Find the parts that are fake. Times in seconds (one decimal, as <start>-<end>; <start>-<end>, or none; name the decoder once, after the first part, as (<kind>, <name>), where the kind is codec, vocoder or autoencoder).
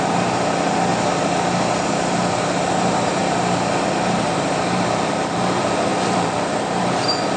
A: 0.0-0.9 (vocoder, BigVGAN v2); 2.7-3.2; 3.9-7.4